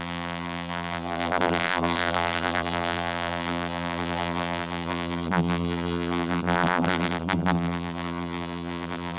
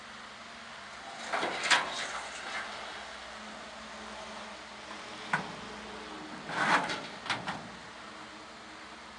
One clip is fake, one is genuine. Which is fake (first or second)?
first